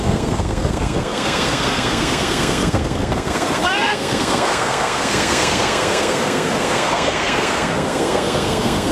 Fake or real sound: fake